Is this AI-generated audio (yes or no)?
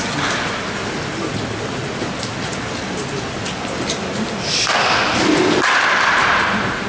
no